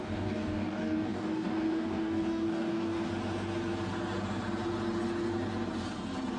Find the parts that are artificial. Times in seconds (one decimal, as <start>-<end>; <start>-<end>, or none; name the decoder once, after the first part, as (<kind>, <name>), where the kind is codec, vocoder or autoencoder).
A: 0.0-3.1 (codec, DAC)